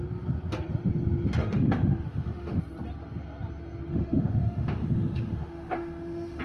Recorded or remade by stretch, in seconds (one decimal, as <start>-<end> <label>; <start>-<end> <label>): 0.0-1.4 recorded; 1.4-2.6 remade; 2.6-3.9 recorded; 3.9-6.4 remade